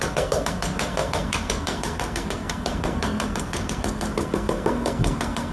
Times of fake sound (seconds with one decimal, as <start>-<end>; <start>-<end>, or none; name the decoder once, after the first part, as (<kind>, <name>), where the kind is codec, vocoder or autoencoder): 0.0-5.5 (codec, SNAC)